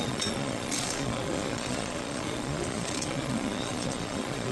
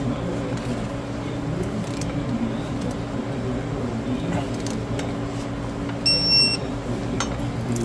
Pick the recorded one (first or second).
second